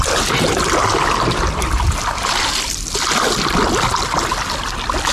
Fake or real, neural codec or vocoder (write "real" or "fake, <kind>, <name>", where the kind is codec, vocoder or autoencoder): real